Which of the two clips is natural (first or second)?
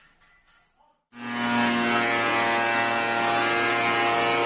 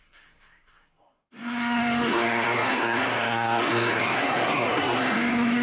first